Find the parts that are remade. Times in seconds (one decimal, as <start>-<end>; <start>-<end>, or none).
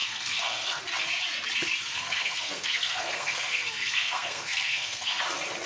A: 0.0-0.8; 1.8-5.2